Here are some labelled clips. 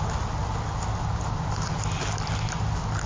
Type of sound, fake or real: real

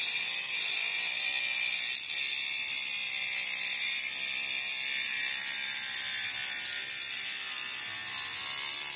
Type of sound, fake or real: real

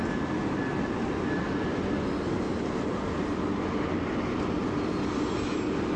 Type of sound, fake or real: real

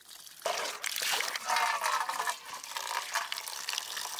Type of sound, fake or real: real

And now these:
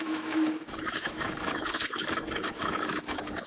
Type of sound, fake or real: fake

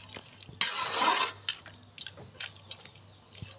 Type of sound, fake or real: real